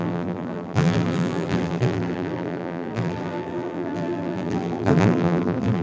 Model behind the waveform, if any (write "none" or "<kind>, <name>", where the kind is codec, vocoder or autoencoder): vocoder, BigVGAN v2